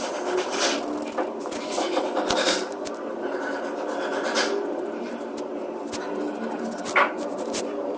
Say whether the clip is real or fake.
real